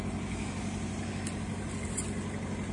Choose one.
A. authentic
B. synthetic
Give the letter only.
A